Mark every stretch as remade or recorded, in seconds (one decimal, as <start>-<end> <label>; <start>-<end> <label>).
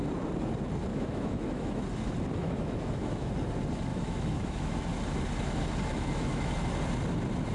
0.0-0.9 recorded; 0.9-1.8 remade; 1.8-2.4 recorded; 2.4-3.3 remade; 3.3-3.9 recorded; 3.9-4.7 remade; 4.7-5.9 recorded; 5.9-6.5 remade; 6.5-7.5 recorded